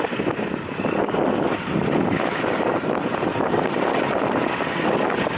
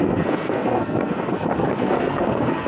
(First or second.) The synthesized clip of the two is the second